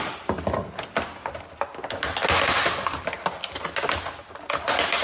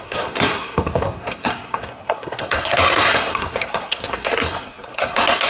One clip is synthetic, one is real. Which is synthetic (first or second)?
second